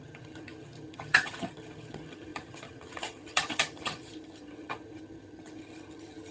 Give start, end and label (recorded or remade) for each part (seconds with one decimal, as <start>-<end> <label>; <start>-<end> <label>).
0.0-6.3 remade